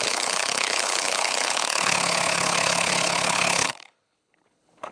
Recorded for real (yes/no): no